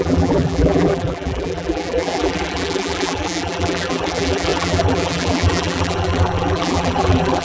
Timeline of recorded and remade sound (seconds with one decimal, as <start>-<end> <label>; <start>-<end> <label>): 0.0-7.4 remade